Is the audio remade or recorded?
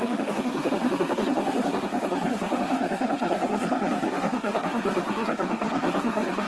remade